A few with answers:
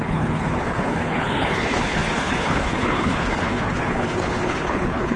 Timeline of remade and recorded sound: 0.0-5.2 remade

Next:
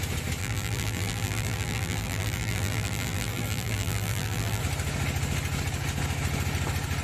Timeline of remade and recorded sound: 0.0-0.4 recorded; 0.4-4.6 remade; 4.6-7.0 recorded

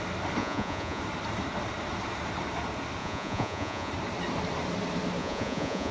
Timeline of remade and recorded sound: 0.0-0.4 recorded; 0.4-1.0 remade; 1.0-3.0 recorded; 3.0-3.9 remade; 3.9-5.2 recorded; 5.2-5.9 remade

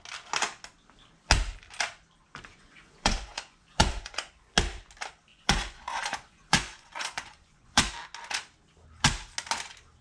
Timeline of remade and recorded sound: 0.0-2.5 recorded; 2.5-4.3 remade; 4.3-5.3 recorded; 5.3-7.9 remade; 7.9-10.0 recorded

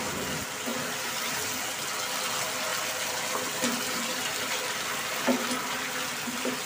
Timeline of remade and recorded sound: 0.0-6.7 recorded

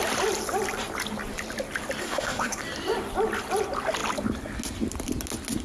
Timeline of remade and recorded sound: 0.0-2.0 recorded; 2.0-2.6 remade; 2.6-5.6 recorded

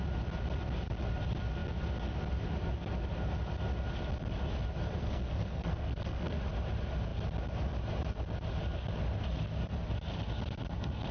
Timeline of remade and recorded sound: 0.0-5.0 recorded; 5.0-6.4 remade; 6.4-11.1 recorded

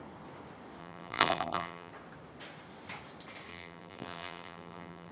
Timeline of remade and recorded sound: 0.0-0.8 recorded; 0.8-1.9 remade; 1.9-3.5 recorded; 3.5-5.1 remade